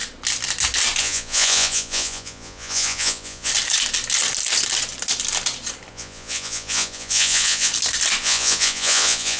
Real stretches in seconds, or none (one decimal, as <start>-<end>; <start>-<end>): 0.0-1.0; 3.5-5.9; 7.7-8.2